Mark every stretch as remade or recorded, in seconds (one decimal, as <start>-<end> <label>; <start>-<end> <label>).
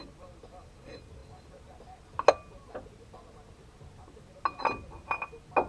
0.0-5.7 recorded